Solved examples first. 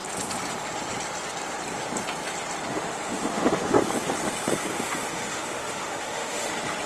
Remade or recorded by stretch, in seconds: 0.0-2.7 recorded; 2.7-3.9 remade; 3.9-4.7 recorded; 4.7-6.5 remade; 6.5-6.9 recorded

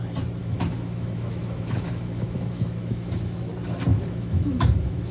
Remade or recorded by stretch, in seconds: 0.0-0.4 recorded; 0.4-3.5 remade; 3.5-3.9 recorded; 3.9-5.1 remade

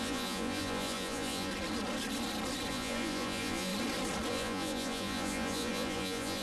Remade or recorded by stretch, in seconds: 0.0-1.5 remade; 1.5-2.7 recorded; 2.7-3.7 remade; 3.7-4.3 recorded; 4.3-6.4 remade

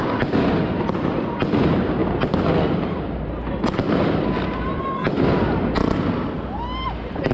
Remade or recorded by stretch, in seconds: 0.0-7.3 recorded

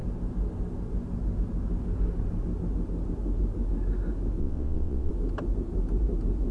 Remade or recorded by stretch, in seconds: 0.0-4.4 recorded; 4.4-5.1 remade; 5.1-6.5 recorded

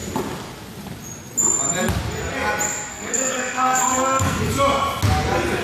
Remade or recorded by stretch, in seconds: 0.0-2.9 recorded; 2.9-4.5 remade; 4.5-5.6 recorded

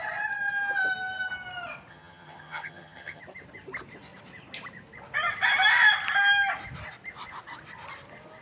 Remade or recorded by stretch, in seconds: 0.0-1.9 recorded; 1.9-3.2 remade; 3.2-8.4 recorded